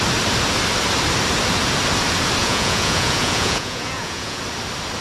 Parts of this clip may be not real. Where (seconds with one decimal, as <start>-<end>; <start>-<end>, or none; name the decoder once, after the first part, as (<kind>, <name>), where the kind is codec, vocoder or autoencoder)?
2.4-4.4 (vocoder, Vocos)